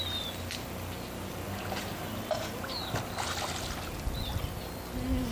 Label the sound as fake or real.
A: real